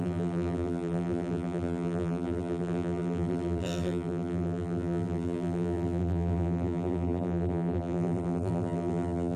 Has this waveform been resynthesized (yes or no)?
yes